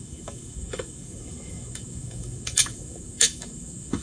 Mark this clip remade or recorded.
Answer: remade